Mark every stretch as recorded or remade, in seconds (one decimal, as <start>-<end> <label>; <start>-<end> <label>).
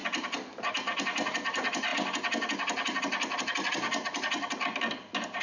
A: 0.0-5.4 recorded